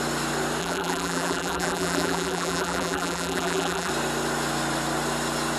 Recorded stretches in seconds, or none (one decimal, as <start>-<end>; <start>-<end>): 0.0-0.6; 3.9-5.6